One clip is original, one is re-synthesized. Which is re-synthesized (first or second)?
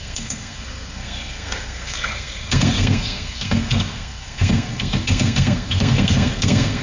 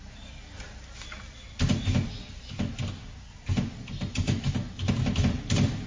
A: first